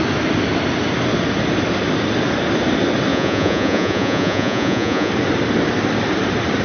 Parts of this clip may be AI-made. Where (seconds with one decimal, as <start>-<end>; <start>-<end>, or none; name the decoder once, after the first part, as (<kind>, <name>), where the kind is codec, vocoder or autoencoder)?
3.1-5.1 (vocoder, Vocos)

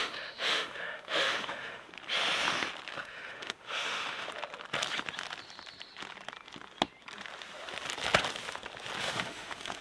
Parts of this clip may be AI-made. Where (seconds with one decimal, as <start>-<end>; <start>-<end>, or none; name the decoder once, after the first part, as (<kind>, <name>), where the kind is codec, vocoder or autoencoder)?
0.0-1.9 (autoencoder, DAC-VAE); 2.9-4.3; 9.0-9.8

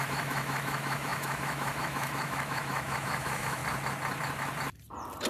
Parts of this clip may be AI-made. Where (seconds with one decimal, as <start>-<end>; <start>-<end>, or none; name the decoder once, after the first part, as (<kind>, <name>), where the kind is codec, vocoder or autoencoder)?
0.0-3.6 (autoencoder, DAC-VAE)